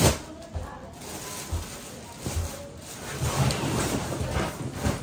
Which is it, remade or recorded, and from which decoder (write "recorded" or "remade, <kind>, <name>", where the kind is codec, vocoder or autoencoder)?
recorded